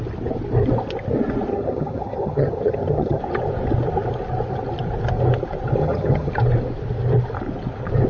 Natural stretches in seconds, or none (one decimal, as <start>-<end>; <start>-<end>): 0.0-1.5; 3.2-5.8; 6.3-8.1